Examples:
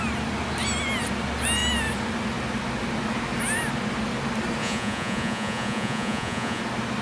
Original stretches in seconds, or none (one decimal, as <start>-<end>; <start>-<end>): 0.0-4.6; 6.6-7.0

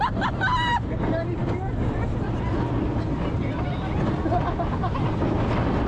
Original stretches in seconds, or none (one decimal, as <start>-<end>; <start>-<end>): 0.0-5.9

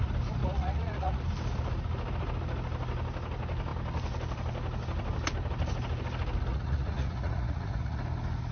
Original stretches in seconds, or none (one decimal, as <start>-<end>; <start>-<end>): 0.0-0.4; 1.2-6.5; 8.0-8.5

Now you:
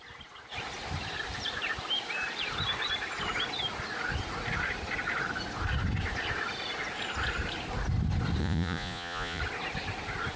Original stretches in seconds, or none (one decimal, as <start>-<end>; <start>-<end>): 0.0-8.4; 9.4-10.4

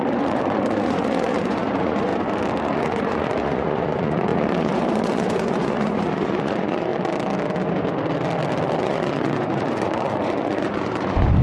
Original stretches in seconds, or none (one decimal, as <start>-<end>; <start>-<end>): 2.1-2.6; 6.9-8.8

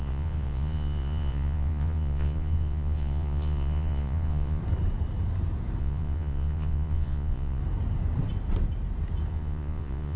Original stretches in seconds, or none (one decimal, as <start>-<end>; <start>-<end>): 4.6-5.8; 7.6-9.3